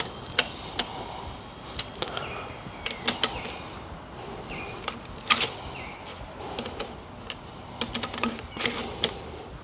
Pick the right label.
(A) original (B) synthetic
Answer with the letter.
A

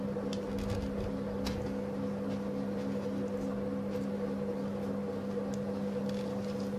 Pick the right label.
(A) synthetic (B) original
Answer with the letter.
B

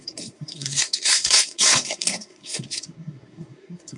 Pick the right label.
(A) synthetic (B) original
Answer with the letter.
A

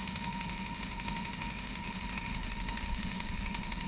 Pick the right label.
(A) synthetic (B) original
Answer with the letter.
A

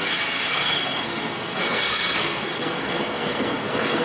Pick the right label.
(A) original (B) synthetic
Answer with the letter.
B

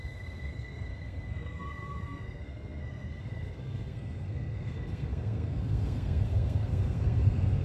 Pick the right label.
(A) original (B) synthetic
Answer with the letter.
B